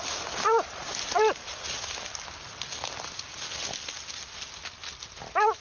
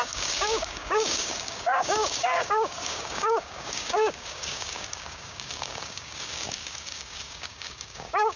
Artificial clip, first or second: second